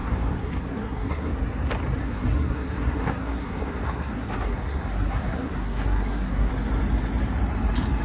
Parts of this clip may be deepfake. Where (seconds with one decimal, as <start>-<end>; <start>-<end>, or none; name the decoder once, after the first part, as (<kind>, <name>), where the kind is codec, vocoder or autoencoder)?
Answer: 0.0-1.3 (codec, SNAC); 2.0-6.5